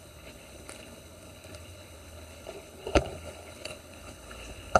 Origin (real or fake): fake